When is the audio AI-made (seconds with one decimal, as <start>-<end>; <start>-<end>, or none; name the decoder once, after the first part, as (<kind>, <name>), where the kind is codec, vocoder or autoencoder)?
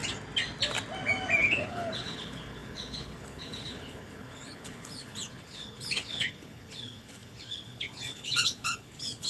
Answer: 1.4-9.3 (codec, HILCodec)